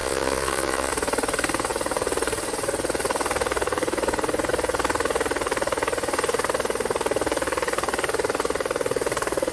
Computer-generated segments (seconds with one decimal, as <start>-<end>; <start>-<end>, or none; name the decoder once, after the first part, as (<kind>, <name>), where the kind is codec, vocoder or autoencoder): 0.0-0.9 (vocoder, Vocos)